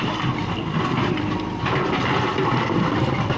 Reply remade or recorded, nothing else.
recorded